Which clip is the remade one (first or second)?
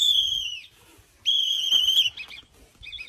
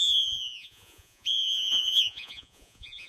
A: second